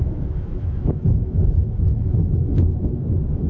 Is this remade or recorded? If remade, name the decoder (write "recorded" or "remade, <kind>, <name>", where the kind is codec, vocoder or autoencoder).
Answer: remade, autoencoder, DAC-VAE